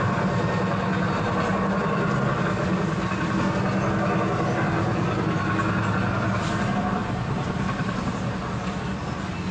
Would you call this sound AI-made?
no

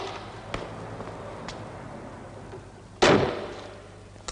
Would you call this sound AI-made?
no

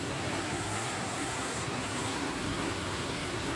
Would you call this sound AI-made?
yes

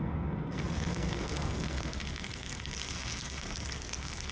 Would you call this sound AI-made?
yes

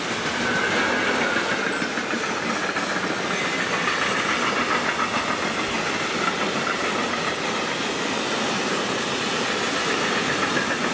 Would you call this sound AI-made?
no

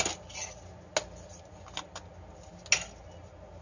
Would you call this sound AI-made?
no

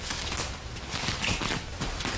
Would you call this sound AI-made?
no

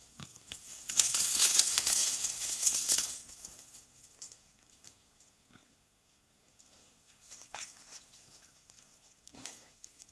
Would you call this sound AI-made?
yes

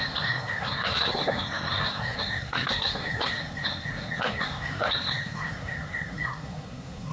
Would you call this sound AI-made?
yes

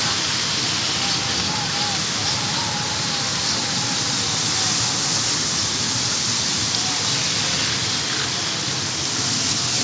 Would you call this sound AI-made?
no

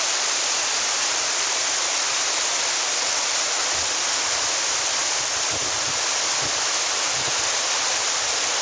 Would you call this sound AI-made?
no